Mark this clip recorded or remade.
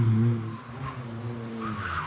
recorded